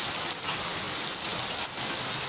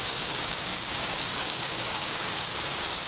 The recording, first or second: first